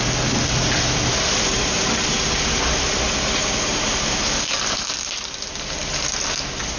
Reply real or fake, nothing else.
real